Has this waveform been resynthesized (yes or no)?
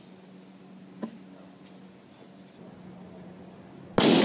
no